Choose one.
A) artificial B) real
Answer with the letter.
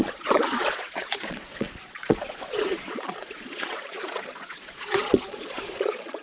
A